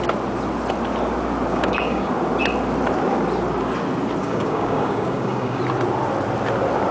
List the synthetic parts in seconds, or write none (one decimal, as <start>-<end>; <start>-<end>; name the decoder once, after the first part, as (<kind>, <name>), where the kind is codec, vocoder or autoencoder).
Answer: 1.5-2.1 (codec, DAC); 4.2-5.6